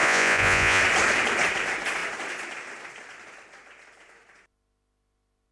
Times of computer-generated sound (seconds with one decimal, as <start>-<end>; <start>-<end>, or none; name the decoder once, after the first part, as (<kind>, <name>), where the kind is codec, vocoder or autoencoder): 0.0-0.8 (vocoder, Vocos)